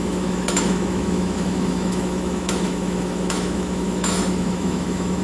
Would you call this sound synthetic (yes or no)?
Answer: yes